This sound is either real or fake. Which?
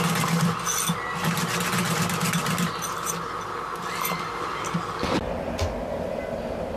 real